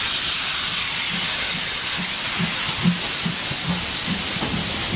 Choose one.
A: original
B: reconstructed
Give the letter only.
A